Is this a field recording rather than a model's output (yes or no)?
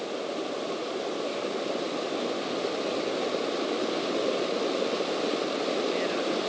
yes